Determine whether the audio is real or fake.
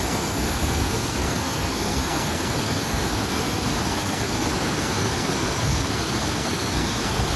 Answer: fake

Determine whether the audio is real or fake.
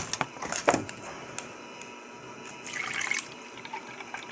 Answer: real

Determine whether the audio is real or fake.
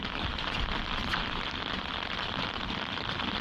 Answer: fake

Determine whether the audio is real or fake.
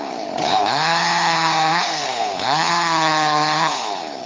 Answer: fake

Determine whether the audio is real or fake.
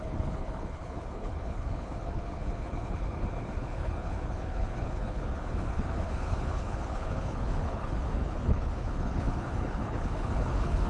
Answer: fake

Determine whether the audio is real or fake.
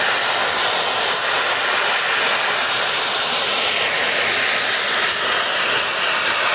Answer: real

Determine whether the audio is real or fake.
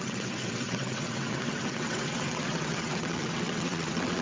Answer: fake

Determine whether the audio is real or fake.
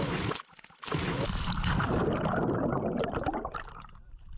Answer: fake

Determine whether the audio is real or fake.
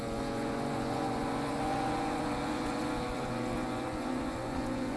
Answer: fake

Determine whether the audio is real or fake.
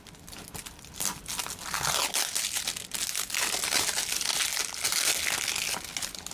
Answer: real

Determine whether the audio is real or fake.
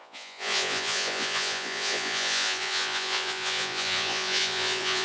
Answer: fake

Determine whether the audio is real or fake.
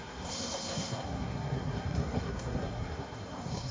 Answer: fake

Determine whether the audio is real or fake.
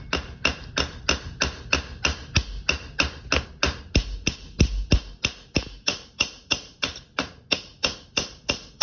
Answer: real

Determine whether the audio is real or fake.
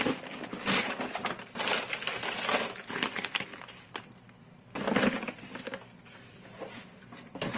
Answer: real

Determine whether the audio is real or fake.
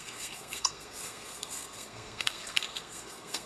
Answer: fake